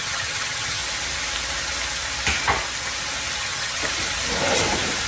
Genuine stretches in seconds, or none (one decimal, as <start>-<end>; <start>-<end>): 0.8-3.4; 3.8-5.1